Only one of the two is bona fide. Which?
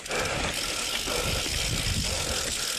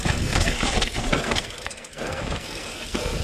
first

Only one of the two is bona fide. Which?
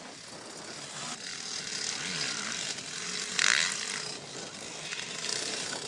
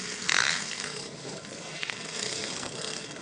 first